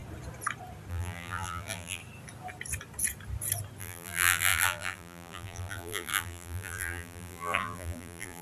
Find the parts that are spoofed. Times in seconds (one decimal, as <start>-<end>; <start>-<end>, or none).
0.9-2.0; 3.8-8.4